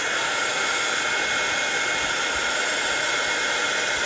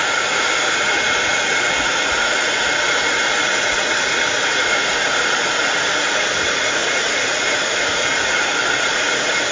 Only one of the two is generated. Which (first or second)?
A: second